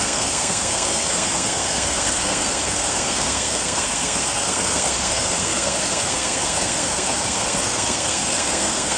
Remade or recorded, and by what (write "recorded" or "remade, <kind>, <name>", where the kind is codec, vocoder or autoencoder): remade, codec, SNAC